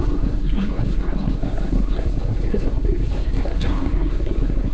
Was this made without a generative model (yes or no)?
no